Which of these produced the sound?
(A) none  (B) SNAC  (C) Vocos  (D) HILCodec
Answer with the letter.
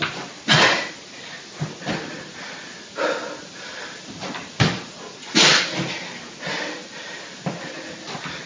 A